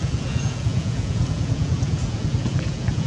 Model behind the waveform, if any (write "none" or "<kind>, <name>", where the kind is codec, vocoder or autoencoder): vocoder, Vocos